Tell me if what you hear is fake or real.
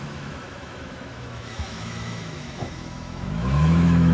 fake